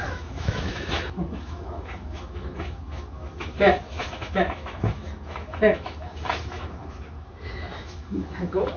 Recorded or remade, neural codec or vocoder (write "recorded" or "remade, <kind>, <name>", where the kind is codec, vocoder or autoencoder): remade, autoencoder, DAC-VAE